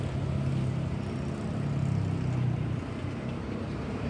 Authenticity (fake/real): real